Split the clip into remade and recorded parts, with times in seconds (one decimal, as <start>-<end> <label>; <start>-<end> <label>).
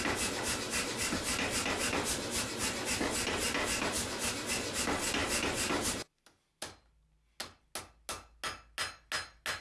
0.0-9.6 recorded